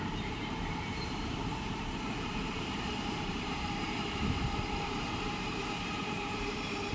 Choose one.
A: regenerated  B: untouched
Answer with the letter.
A